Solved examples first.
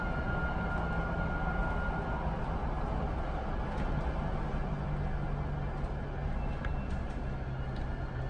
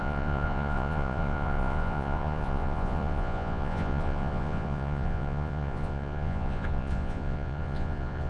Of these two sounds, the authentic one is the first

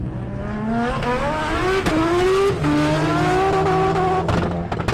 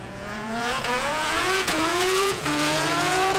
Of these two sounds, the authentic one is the first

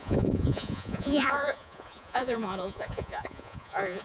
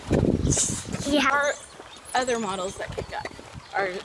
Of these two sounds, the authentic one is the second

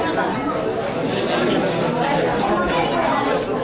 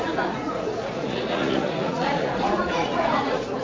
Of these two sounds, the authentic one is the first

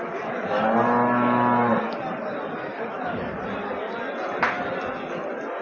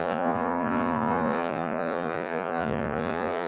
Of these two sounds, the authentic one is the first